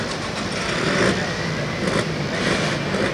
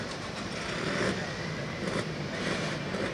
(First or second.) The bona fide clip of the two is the first